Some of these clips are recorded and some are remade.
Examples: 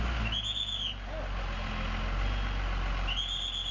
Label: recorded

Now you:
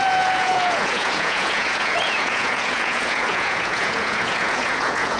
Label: remade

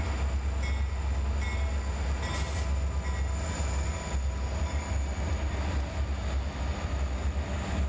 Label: recorded